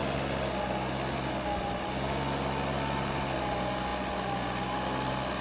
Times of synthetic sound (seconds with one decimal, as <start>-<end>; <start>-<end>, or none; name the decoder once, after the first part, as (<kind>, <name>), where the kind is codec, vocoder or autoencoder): none